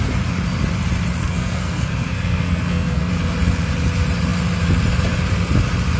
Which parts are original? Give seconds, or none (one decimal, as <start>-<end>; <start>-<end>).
0.0-1.2; 3.1-6.0